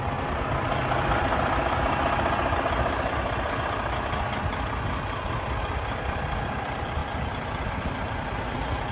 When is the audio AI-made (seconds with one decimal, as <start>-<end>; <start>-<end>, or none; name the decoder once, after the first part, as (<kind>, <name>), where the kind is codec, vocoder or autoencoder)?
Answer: 0.0-1.3 (vocoder, BigVGAN v2); 5.6-7.0